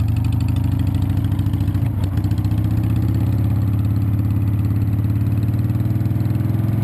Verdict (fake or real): real